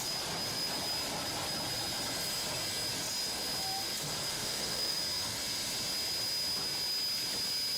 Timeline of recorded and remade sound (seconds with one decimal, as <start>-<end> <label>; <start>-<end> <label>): 0.0-4.3 recorded; 4.3-5.0 remade; 5.0-7.8 recorded